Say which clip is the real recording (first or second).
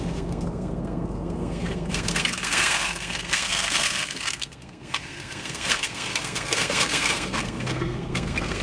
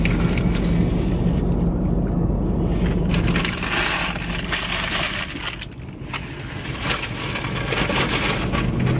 second